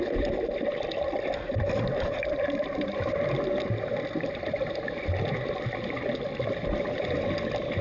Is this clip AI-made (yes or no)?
no